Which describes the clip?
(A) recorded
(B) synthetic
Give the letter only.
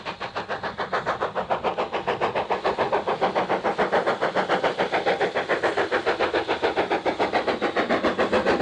A